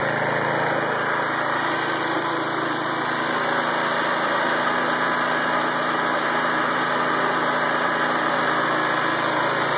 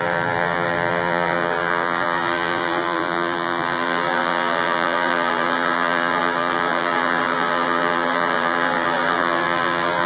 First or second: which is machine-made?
second